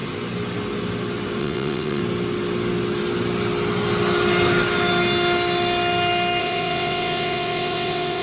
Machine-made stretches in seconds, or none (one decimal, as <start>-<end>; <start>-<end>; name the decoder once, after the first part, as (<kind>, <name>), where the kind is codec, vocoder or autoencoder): 1.4-2.0 (vocoder, WaveNeXt); 6.4-8.2